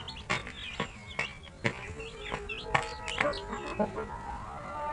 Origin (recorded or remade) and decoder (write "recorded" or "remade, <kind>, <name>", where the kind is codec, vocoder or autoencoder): recorded